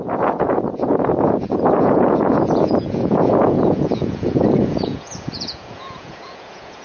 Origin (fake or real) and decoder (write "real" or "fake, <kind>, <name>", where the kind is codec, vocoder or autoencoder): fake, vocoder, Vocos